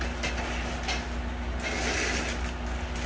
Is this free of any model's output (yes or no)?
yes